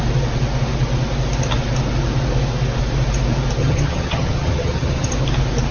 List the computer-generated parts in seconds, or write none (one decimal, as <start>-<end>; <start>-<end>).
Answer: 3.6-5.1

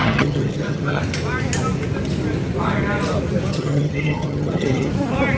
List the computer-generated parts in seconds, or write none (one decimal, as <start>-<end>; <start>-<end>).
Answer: 0.0-1.0; 3.5-4.9

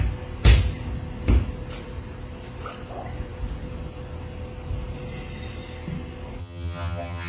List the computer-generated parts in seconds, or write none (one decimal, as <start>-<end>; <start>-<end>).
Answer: 6.4-7.3